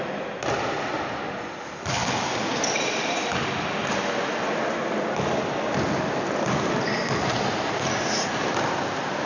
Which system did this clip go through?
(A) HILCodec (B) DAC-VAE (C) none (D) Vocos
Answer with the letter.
C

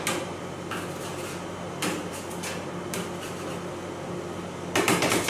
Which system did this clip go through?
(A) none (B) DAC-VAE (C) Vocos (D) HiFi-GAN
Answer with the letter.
A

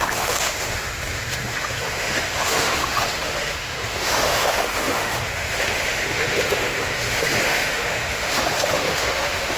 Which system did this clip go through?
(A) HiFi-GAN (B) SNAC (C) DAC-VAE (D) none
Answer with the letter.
C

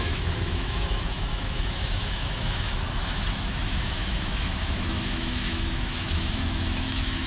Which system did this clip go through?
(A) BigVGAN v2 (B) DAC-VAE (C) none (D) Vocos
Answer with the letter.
B